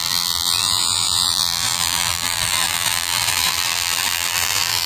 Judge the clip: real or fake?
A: fake